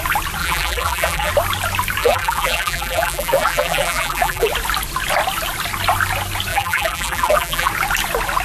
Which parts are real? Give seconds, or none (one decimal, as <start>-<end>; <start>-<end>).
0.0-0.4; 1.3-2.0; 4.5-6.5; 7.7-8.4